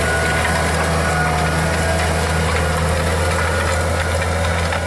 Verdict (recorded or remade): recorded